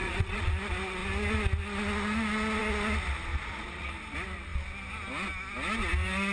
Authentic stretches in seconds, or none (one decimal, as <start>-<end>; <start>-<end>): 0.5-3.3; 3.9-6.3